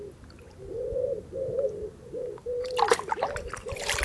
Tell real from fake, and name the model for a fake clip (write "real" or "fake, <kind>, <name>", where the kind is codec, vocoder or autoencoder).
real